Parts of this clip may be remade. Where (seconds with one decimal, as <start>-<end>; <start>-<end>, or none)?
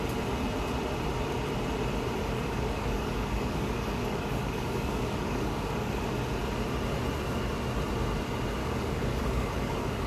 2.2-6.0; 8.6-10.1